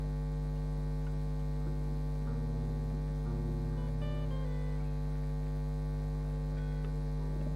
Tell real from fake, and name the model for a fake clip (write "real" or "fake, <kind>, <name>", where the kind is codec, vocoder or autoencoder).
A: real